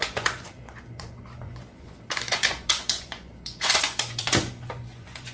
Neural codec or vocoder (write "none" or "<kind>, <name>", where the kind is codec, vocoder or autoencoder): vocoder, Vocos